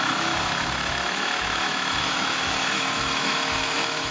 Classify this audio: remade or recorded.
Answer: remade